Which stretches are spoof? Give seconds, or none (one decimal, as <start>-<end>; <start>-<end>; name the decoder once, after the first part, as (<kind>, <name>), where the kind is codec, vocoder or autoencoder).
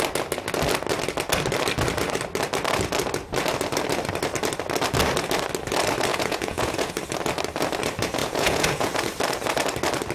6.1-6.9 (vocoder, Vocos); 8.2-9.1